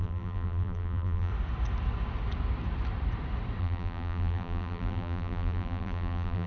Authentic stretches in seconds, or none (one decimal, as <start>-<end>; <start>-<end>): 1.3-3.6